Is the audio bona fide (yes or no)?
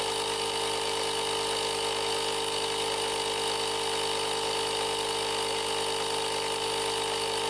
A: yes